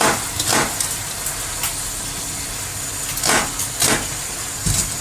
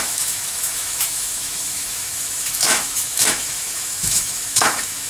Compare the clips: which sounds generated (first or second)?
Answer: second